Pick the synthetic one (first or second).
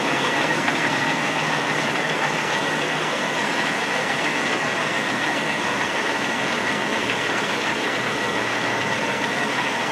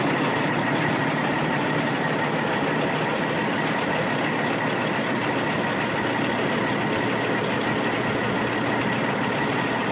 first